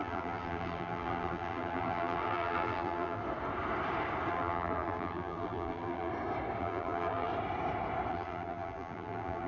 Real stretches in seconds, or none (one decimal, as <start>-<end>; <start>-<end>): 3.2-4.3; 6.1-6.6; 7.3-8.1